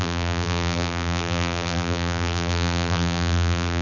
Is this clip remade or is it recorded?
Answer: remade